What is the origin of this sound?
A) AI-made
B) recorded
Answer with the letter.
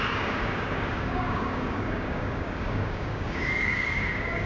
A